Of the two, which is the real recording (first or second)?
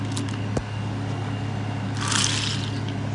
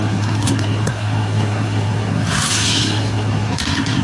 first